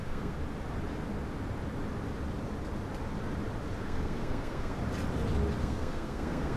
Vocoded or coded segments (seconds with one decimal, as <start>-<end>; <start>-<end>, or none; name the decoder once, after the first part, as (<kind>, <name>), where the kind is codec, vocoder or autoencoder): 0.0-0.4 (codec, SNAC); 3.8-4.8; 5.6-6.6